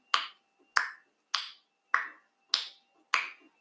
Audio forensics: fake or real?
real